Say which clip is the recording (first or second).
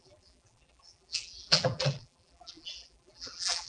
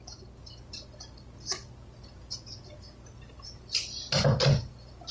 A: second